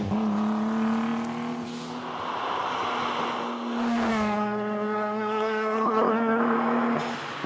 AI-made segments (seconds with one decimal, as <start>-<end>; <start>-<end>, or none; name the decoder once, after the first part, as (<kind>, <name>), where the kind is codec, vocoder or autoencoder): 4.1-6.4 (codec, SNAC)